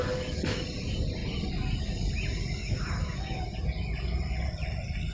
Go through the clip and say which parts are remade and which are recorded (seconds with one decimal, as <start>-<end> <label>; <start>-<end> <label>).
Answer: 0.0-2.6 recorded; 2.6-3.4 remade; 3.4-5.1 recorded